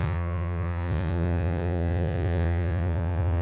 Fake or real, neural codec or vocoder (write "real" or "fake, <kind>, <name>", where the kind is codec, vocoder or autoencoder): fake, vocoder, Vocos